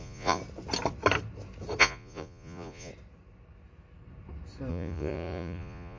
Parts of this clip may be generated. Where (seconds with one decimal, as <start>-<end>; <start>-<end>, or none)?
0.0-0.4; 1.8-2.9; 4.7-6.0